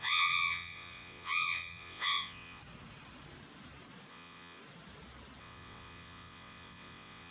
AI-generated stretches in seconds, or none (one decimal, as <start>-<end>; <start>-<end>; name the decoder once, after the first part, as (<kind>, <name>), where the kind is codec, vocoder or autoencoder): 0.0-2.6 (vocoder, WaveNeXt); 4.1-4.6; 5.4-7.3